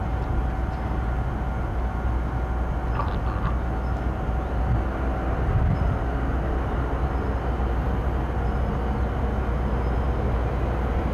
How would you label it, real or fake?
real